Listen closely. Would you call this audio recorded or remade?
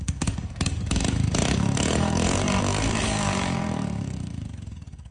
remade